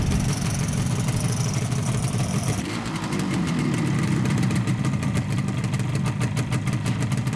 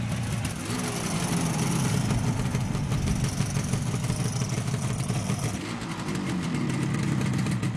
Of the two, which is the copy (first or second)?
first